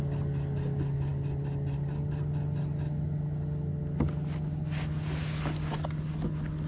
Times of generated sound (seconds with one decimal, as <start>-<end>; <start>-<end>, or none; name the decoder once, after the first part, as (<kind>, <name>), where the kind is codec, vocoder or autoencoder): none

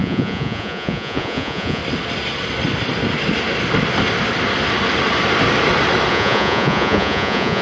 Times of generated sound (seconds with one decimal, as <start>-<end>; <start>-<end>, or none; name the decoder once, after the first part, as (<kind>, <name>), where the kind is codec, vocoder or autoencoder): 0.0-1.8 (vocoder, Vocos); 6.1-7.6

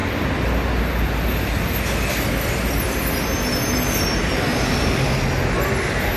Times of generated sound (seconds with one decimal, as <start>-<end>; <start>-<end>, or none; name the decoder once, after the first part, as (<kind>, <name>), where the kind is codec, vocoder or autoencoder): none

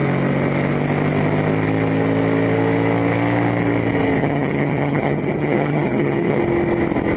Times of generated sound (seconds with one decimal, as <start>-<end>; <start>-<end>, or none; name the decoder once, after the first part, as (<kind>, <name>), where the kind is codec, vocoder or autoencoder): 4.2-6.4 (vocoder, HiFi-GAN)

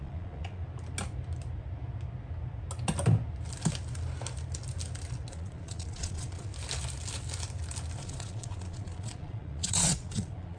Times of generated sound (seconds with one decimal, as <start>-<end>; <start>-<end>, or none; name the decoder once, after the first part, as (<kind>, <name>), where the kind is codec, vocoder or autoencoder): 0.0-0.6 (vocoder, Vocos); 5.3-6.5; 8.0-10.6

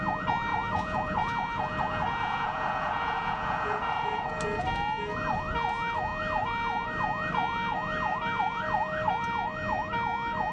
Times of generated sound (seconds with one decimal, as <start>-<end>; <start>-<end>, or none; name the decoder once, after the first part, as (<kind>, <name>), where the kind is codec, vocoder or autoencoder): 0.5-4.4 (vocoder, Vocos)